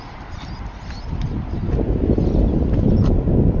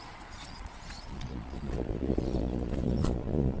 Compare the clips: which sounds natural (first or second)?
first